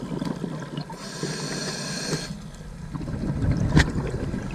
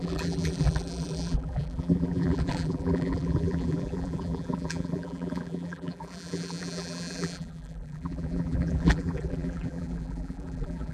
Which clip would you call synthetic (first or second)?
second